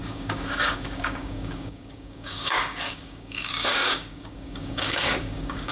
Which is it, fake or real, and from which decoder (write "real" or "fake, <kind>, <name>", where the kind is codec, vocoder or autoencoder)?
fake, codec, DAC